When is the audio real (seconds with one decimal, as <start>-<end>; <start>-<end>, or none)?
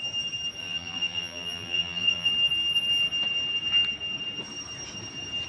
0.0-0.6; 2.3-5.5